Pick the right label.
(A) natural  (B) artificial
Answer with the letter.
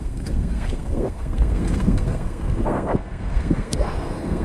B